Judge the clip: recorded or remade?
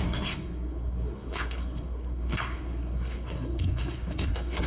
remade